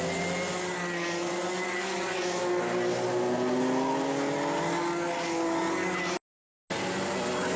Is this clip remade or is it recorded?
recorded